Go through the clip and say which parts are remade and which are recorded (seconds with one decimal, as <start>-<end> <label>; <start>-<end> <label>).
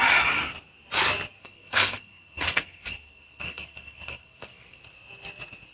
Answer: 0.0-1.4 recorded; 1.4-4.8 remade; 4.8-5.7 recorded